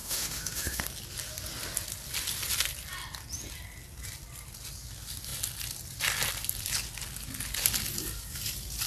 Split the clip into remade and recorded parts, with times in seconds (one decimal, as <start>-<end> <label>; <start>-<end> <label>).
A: 0.0-0.8 remade; 0.8-8.9 recorded